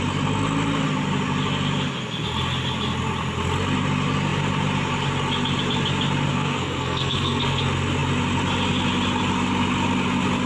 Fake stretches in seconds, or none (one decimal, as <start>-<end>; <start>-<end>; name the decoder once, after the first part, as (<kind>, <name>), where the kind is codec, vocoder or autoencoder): 6.3-7.6 (codec, SNAC)